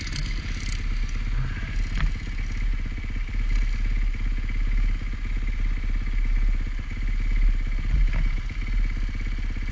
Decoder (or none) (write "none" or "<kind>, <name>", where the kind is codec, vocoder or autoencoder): none